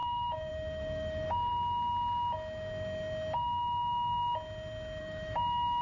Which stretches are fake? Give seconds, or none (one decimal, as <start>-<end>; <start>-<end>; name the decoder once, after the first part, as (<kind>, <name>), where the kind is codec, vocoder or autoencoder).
0.0-1.5 (autoencoder, DAC-VAE); 5.0-5.8